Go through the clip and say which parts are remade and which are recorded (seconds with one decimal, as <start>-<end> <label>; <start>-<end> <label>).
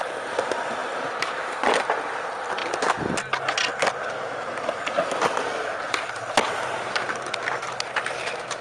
0.0-0.8 recorded; 0.8-1.8 remade; 1.8-8.6 recorded